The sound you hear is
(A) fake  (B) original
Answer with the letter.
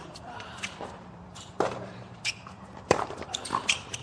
A